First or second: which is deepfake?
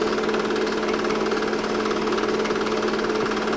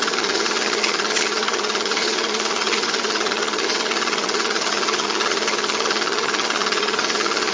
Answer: second